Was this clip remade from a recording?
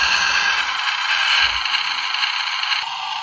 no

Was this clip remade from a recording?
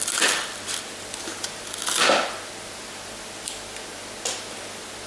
no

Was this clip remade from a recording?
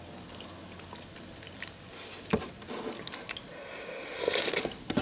no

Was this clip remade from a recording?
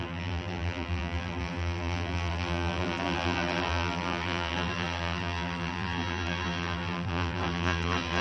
yes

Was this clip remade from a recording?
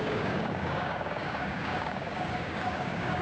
yes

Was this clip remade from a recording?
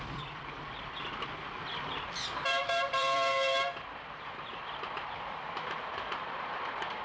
yes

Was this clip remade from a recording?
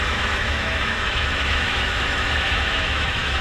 yes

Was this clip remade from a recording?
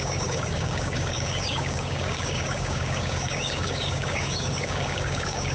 yes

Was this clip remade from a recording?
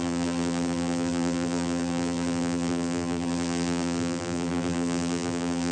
yes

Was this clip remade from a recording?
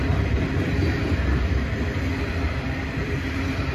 yes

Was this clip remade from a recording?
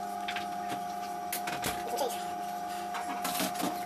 no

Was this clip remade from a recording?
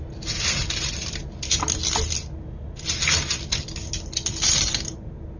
no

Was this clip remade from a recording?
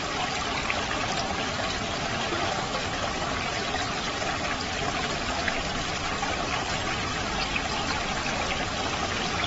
no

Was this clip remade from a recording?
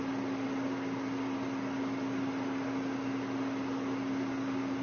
no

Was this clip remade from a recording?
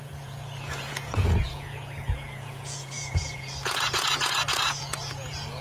yes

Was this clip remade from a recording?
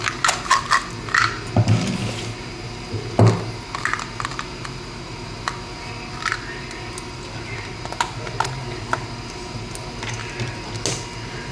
no